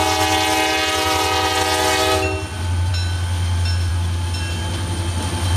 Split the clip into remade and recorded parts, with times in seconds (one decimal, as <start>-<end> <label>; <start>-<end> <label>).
0.0-5.6 recorded